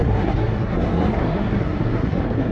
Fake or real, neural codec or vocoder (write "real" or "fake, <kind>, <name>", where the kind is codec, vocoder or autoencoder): fake, codec, SNAC